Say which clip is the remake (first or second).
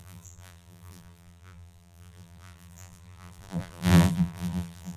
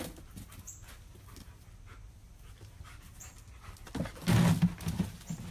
first